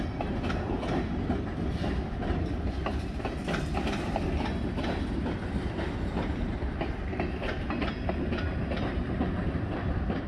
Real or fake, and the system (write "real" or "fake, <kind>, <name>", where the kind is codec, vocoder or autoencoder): fake, vocoder, BigVGAN v2